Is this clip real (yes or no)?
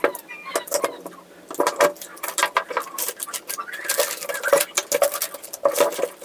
yes